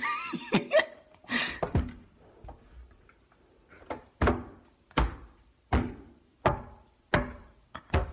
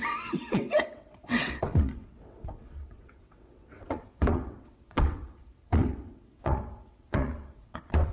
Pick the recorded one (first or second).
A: first